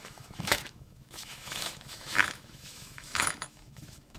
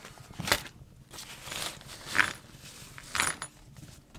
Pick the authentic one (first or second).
second